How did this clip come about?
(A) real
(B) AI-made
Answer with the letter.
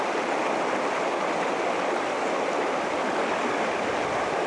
A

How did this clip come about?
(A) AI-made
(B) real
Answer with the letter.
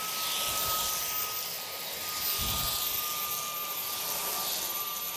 B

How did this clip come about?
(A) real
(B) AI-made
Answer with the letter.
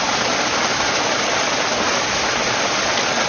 A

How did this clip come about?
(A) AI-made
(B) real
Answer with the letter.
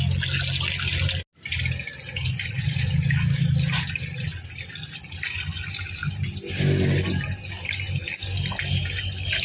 B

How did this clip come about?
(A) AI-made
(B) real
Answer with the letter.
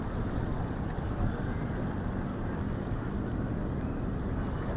B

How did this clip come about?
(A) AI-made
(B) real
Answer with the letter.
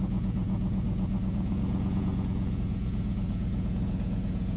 A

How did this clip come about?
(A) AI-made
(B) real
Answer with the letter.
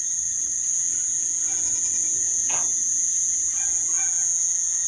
B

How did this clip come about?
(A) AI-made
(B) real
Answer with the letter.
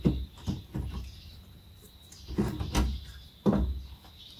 B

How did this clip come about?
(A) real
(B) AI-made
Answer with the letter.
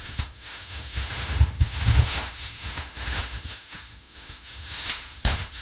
B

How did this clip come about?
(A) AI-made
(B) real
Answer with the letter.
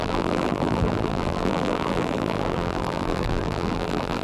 A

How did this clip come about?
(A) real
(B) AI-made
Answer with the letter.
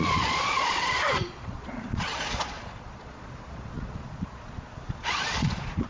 B